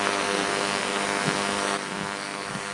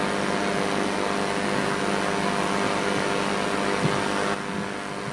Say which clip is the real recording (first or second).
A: second